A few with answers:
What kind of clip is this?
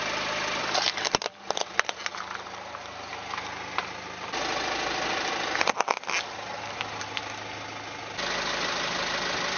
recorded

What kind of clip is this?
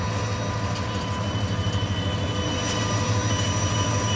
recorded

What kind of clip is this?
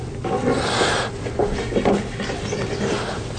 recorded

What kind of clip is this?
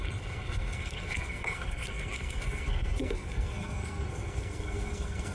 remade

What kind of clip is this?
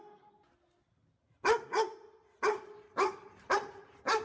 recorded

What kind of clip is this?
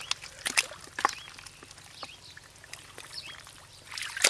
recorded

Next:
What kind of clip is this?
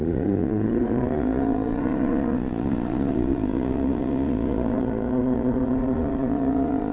remade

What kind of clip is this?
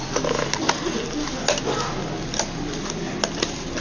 recorded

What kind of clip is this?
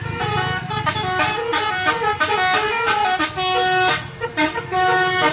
recorded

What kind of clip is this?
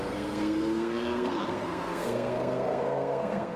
remade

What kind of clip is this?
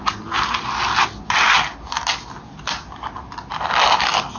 recorded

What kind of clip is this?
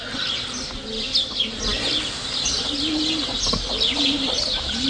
recorded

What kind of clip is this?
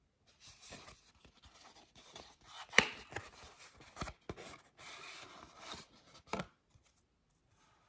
recorded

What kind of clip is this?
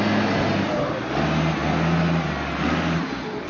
recorded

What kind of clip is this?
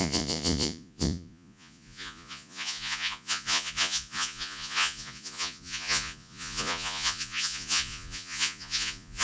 remade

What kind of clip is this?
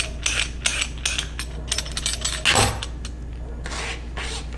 recorded